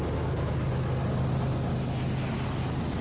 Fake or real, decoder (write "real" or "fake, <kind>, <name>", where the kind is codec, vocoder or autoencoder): real